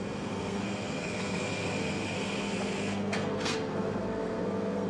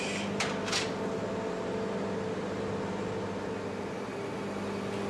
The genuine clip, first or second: second